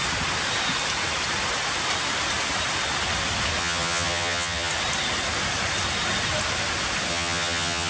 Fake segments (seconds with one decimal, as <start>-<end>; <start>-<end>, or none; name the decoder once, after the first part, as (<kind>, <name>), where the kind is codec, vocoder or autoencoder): 3.6-4.7 (vocoder, HiFi-GAN); 7.1-7.9